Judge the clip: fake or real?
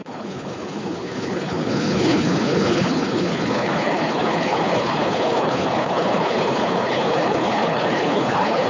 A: fake